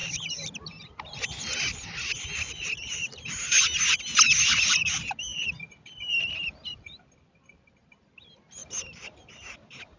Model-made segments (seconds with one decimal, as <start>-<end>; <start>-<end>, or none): 5.3-7.0; 8.6-10.0